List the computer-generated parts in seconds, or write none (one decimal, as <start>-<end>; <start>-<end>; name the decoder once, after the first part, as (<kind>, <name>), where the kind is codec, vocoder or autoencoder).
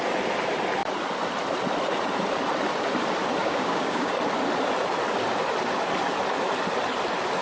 3.4-4.1 (codec, DAC)